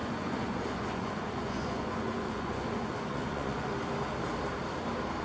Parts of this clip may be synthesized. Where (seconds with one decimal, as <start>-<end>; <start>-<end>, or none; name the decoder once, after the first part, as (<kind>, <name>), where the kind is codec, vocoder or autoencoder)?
0.0-3.7 (vocoder, Vocos)